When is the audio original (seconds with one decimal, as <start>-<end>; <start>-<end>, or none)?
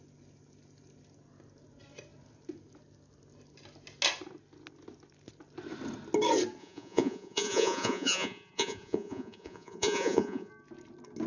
0.0-6.6; 10.5-11.3